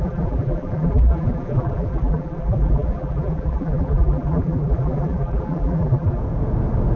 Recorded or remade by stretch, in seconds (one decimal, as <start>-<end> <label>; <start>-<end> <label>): 0.0-6.2 remade; 6.2-7.0 recorded